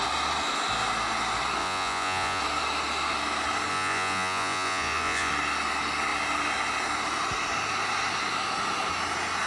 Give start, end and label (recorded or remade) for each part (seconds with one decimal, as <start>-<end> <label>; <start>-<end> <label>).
0.0-1.6 recorded; 1.6-2.4 remade; 2.4-3.7 recorded; 3.7-5.3 remade; 5.3-9.5 recorded